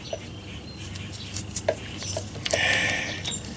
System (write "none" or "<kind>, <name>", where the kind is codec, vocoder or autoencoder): none